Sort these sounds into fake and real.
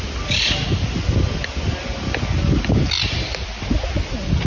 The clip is real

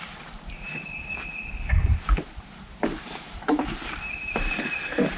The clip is real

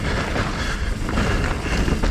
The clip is real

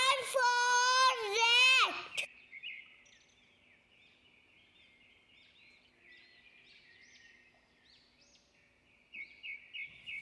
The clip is real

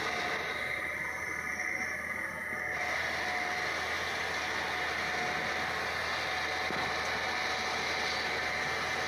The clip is real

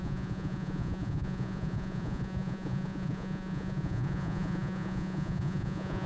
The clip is fake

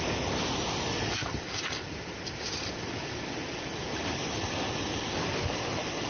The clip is real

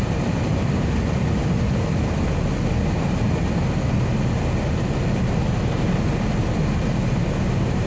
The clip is real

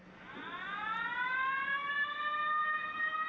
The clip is real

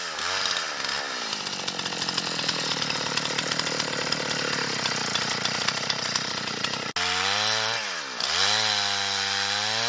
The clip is real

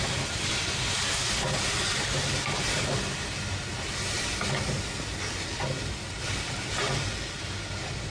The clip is real